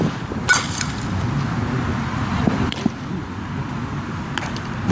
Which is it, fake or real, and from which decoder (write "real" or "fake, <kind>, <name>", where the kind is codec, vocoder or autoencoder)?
real